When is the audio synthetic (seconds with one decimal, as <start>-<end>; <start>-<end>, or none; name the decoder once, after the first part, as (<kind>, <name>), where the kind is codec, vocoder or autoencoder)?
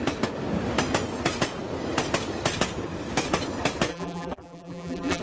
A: 3.9-5.2 (vocoder, BigVGAN v2)